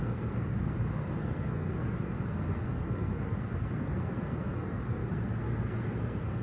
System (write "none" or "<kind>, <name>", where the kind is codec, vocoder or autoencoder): codec, SNAC